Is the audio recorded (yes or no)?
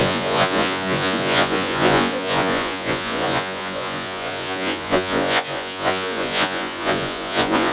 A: no